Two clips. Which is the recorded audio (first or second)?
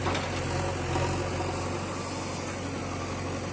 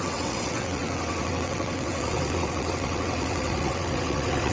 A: first